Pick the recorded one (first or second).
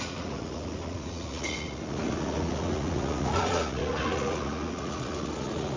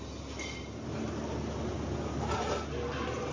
second